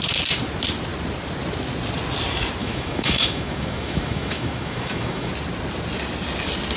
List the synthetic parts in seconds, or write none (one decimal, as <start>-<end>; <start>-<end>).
2.6-5.3